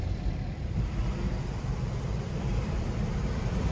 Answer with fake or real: fake